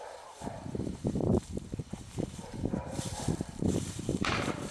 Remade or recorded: remade